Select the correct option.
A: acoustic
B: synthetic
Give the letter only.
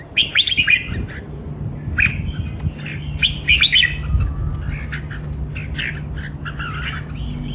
A